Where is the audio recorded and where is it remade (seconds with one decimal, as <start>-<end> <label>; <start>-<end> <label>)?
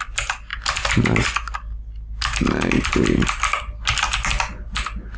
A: 0.0-5.2 recorded